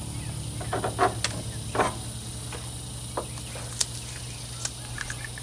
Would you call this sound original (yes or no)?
yes